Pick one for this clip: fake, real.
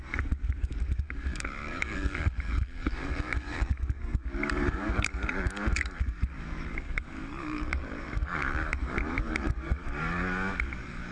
fake